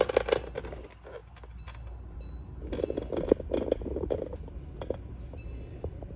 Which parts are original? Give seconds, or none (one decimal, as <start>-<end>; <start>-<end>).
0.0-6.2